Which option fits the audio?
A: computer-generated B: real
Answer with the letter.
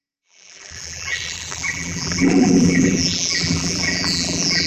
A